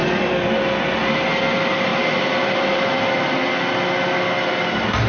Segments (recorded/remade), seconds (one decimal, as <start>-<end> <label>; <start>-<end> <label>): 0.0-0.6 remade; 0.6-1.9 recorded; 1.9-2.6 remade; 2.6-5.1 recorded